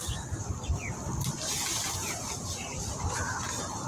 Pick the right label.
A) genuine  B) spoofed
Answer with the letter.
A